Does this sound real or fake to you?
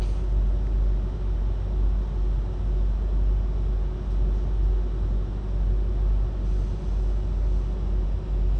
real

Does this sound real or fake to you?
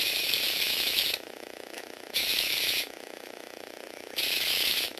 fake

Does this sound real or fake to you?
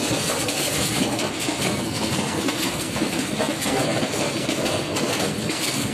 fake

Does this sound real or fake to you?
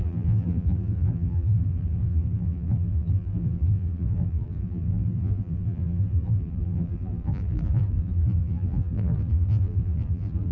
fake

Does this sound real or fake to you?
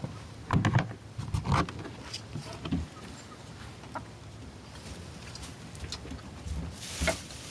real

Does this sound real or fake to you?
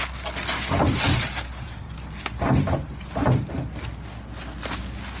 real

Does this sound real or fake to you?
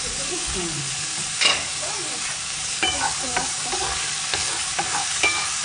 fake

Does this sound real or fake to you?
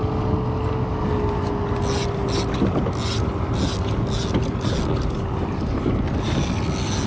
real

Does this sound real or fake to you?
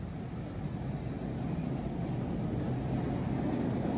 real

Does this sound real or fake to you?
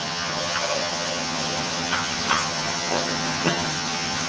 fake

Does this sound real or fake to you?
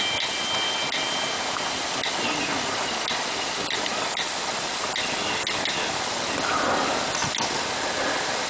real